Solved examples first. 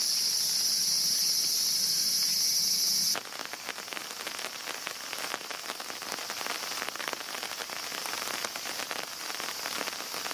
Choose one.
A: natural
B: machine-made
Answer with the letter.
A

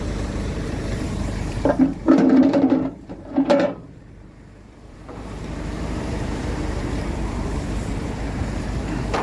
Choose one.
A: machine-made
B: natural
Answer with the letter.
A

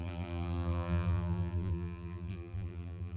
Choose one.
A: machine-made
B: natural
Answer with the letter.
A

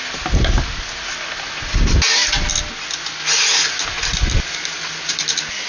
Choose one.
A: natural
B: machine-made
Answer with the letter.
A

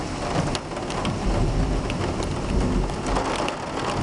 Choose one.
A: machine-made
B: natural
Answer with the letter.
B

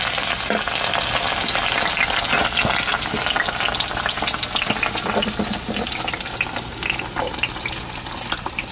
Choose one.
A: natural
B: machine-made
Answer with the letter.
A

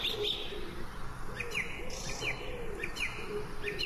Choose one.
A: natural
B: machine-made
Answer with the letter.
A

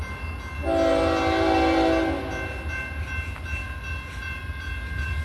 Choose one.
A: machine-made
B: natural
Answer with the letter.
B